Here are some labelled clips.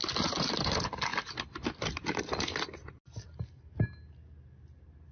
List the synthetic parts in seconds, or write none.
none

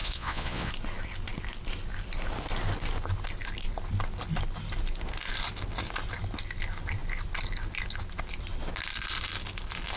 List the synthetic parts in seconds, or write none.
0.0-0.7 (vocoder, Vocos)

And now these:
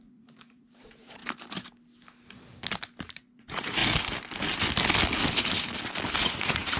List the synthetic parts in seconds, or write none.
0.0-1.2 (vocoder, Vocos); 3.0-3.8; 6.2-6.8